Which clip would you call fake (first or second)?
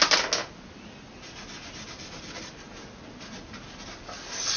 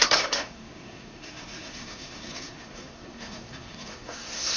second